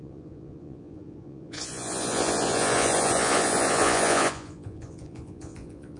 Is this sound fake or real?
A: fake